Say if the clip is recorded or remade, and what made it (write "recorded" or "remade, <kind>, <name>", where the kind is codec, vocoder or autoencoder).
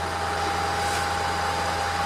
recorded